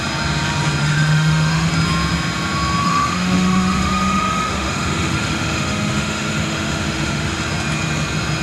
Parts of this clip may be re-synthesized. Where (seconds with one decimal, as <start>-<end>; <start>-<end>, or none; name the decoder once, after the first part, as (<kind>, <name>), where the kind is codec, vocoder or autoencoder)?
0.8-1.7 (autoencoder, DAC-VAE); 2.8-7.4